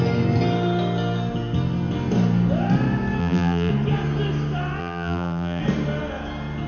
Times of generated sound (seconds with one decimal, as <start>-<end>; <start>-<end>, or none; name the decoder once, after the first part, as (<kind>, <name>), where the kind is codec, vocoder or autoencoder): 3.2-3.7 (vocoder, BigVGAN v2); 4.8-5.6